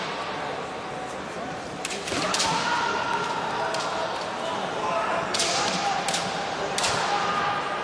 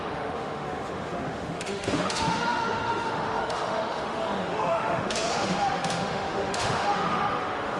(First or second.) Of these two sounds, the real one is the first